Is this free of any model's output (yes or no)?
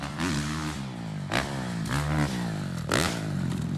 yes